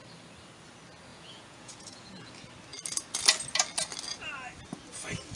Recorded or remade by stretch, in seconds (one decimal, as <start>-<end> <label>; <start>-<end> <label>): 0.0-1.1 recorded; 1.1-2.3 remade; 2.3-5.4 recorded